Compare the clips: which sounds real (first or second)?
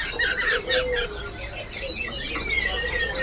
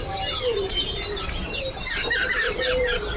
first